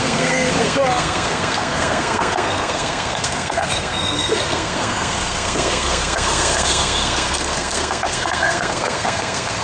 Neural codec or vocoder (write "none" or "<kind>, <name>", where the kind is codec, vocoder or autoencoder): codec, SNAC